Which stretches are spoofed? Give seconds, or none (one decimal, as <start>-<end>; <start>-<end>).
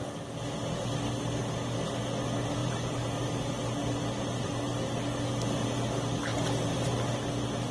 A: 2.6-3.5